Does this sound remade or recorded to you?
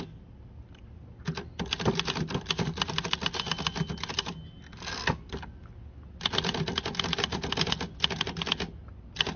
recorded